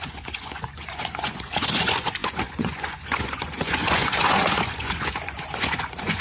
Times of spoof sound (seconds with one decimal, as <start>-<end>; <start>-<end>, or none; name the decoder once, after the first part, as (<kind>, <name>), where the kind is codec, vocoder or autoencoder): 0.0-6.2 (vocoder, Vocos)